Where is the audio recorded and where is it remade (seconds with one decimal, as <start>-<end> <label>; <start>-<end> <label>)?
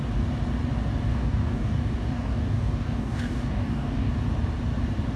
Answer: 0.0-1.1 recorded; 1.1-4.1 remade; 4.1-5.2 recorded